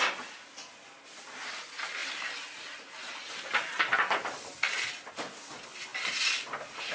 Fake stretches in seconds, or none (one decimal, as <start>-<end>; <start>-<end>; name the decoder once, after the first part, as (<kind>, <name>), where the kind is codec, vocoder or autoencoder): none